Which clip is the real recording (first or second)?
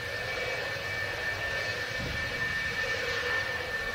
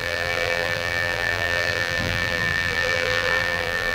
first